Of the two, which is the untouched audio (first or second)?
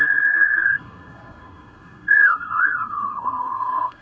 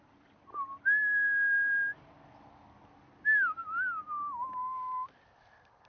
second